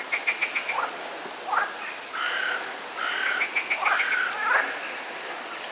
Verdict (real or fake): real